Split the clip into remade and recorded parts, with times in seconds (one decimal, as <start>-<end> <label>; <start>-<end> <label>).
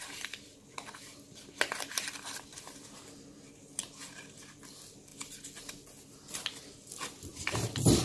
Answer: 0.0-8.0 recorded